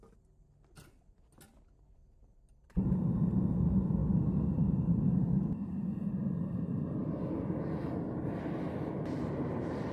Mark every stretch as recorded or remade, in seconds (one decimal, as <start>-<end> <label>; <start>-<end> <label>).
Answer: 0.0-9.9 recorded